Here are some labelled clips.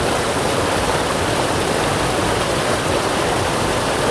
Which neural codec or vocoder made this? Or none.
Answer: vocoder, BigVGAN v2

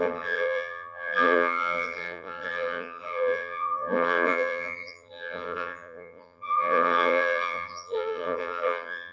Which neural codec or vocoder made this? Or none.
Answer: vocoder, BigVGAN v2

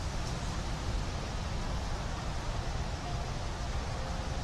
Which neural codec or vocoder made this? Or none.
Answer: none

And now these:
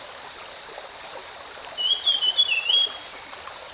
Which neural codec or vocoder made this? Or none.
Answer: none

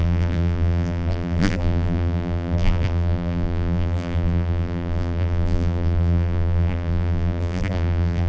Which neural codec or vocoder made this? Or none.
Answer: vocoder, BigVGAN v2